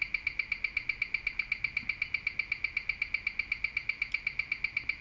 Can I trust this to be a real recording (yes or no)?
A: yes